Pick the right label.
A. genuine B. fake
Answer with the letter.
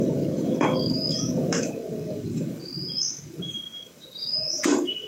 B